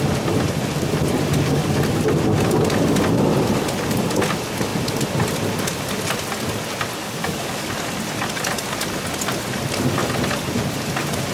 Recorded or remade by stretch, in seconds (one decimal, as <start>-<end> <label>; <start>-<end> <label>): 0.0-7.0 recorded; 7.0-7.7 remade; 7.7-11.3 recorded